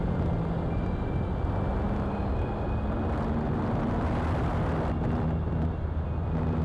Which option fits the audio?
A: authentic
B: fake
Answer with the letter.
A